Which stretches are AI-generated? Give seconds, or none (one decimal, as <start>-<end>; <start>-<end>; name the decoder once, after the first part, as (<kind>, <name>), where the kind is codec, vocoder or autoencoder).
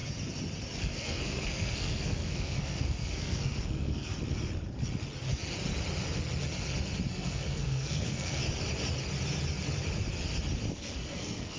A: 0.8-4.1 (codec, SNAC); 7.1-8.4; 10.7-11.6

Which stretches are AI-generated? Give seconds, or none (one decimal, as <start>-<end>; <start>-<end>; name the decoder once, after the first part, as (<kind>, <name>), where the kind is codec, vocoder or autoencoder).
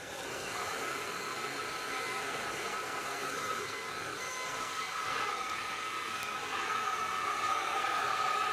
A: 0.0-8.5 (codec, SNAC)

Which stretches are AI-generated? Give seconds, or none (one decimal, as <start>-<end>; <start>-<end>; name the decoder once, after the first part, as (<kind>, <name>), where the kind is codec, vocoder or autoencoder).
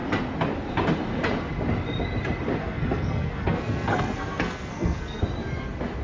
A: 2.6-5.2 (codec, SNAC)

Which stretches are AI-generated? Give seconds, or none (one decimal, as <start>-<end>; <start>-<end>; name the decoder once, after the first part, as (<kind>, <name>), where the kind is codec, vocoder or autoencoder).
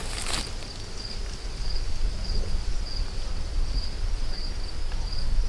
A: none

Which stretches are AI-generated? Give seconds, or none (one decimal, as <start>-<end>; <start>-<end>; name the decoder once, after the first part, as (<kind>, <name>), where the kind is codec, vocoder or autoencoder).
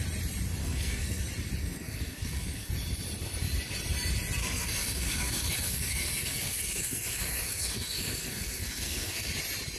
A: 0.6-1.2 (codec, SNAC); 1.6-2.7; 4.4-9.3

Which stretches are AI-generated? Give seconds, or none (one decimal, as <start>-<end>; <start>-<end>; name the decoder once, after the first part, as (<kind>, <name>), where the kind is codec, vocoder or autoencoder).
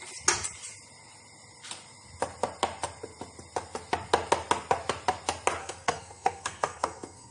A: 5.6-7.3 (codec, SNAC)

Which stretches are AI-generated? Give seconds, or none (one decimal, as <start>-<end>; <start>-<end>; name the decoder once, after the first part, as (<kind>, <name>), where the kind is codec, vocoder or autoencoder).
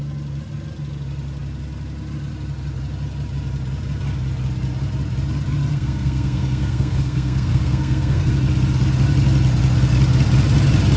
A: 5.7-8.3 (codec, SNAC)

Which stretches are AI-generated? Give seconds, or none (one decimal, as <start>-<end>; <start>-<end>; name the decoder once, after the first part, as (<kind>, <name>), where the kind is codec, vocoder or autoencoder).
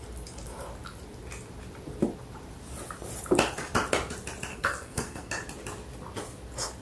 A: 4.5-5.3 (codec, SNAC)